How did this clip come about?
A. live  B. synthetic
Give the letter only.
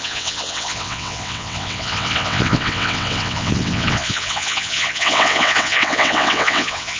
B